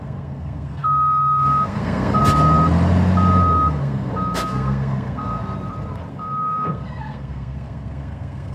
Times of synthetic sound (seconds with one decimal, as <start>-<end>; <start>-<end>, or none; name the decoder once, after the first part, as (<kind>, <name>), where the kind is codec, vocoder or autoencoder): 0.0-2.2 (codec, SNAC); 3.8-5.4; 6.1-8.5